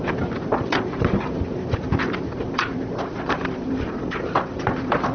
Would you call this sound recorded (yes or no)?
no